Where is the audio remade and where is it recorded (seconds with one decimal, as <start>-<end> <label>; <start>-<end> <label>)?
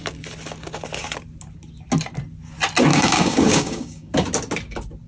0.0-2.9 recorded; 2.9-4.1 remade; 4.1-5.1 recorded